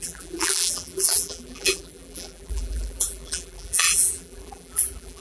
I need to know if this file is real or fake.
fake